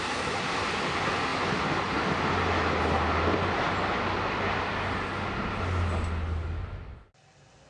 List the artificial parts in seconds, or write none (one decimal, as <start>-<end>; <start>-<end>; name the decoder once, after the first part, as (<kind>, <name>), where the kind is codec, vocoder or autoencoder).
none